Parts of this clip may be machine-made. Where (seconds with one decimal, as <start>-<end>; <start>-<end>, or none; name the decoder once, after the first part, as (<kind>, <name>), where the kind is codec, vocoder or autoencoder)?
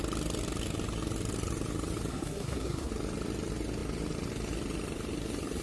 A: 2.1-2.9 (codec, SNAC)